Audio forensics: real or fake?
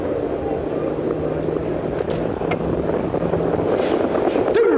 real